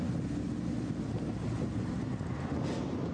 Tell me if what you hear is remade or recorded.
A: recorded